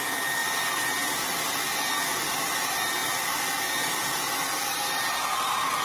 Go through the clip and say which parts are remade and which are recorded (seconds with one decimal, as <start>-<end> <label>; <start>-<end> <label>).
0.0-5.8 recorded